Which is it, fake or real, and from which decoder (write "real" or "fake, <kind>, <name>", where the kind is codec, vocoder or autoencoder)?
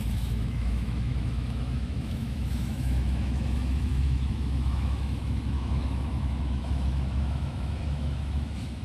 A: fake, autoencoder, DAC-VAE